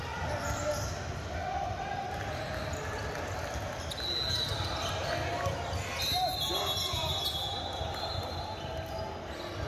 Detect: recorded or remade recorded